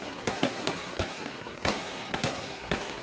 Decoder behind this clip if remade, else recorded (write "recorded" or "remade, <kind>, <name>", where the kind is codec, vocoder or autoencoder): remade, codec, SNAC